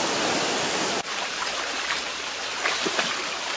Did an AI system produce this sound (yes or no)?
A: no